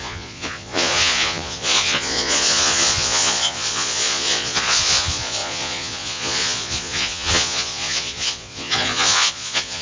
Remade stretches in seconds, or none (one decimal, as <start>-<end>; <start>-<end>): 0.0-9.8